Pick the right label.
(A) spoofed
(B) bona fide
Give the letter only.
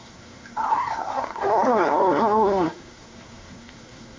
A